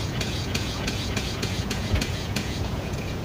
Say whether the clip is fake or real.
fake